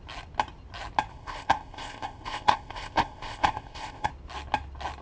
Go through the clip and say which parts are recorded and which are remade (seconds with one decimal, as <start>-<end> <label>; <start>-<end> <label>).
0.0-1.1 recorded; 1.1-4.1 remade; 4.1-5.0 recorded

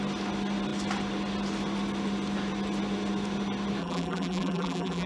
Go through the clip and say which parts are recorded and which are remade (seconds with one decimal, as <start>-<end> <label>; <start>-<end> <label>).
0.0-3.8 recorded; 3.8-5.1 remade